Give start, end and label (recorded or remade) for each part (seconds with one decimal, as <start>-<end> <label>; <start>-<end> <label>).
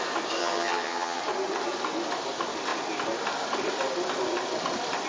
0.0-0.4 recorded; 0.4-1.2 remade; 1.2-5.1 recorded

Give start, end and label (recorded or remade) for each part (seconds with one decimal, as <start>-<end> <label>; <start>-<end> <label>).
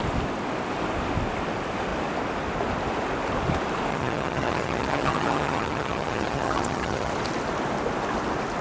0.0-3.9 recorded; 3.9-7.1 remade; 7.1-8.6 recorded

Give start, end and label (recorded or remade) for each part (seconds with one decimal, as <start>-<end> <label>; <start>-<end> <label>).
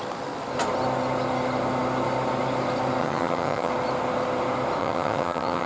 0.0-3.0 recorded; 3.0-3.7 remade; 3.7-4.8 recorded; 4.8-5.7 remade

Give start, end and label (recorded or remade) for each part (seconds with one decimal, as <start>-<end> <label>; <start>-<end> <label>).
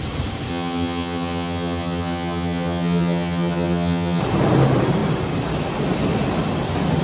0.0-0.5 recorded; 0.5-4.2 remade; 4.2-7.0 recorded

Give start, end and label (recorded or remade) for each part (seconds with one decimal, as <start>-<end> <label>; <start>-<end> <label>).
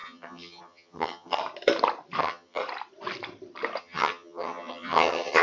0.0-1.4 remade; 1.4-2.2 recorded; 2.2-2.6 remade; 2.6-3.8 recorded; 3.8-5.4 remade